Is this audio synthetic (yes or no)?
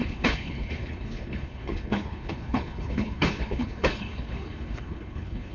yes